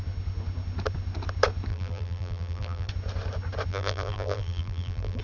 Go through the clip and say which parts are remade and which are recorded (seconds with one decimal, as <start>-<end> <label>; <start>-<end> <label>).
0.0-1.7 recorded; 1.7-2.9 remade; 2.9-3.7 recorded; 3.7-5.2 remade